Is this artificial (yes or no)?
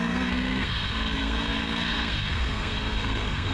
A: yes